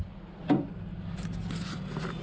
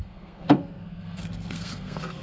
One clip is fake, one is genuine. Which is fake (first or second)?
second